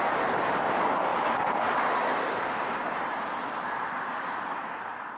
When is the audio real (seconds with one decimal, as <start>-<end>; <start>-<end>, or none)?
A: 0.0-5.2